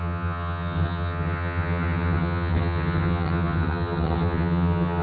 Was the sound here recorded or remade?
remade